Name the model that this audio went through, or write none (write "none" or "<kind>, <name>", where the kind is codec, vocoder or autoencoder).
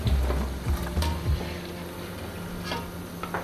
none